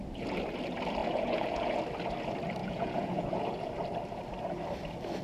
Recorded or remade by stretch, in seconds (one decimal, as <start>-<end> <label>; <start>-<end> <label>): 0.0-1.0 recorded; 1.0-1.8 remade; 1.8-2.6 recorded; 2.6-3.7 remade; 3.7-5.2 recorded